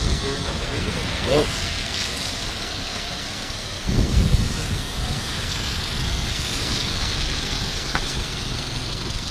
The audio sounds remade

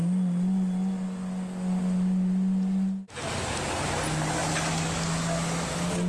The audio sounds recorded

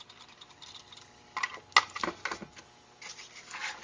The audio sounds recorded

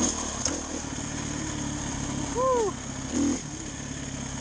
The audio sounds recorded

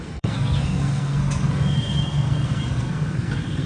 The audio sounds remade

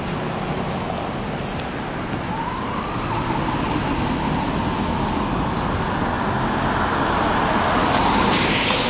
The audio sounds recorded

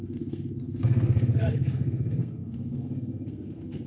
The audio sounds remade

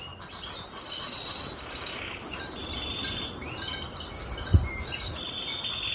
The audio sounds recorded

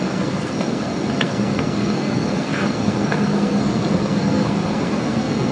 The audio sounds remade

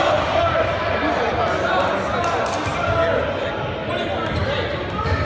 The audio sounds recorded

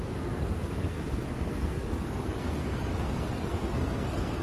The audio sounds remade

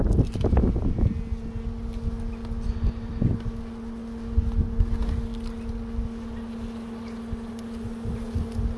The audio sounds recorded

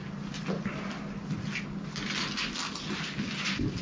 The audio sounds recorded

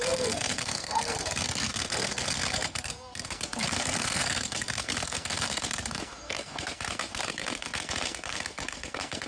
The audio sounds remade